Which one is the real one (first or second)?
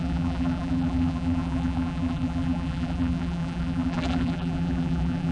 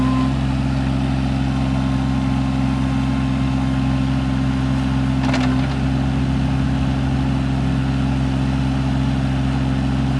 second